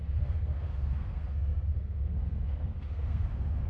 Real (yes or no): no